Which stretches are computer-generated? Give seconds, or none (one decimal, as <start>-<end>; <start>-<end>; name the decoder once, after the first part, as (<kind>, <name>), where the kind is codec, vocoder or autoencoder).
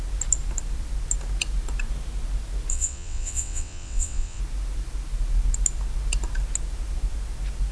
2.7-4.4 (vocoder, WaveNeXt)